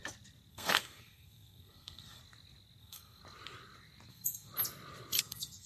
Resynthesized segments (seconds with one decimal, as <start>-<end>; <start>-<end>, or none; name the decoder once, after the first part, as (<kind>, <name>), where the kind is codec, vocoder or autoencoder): 0.5-2.2 (codec, SNAC); 2.8-3.2; 4.1-4.5; 5.2-5.7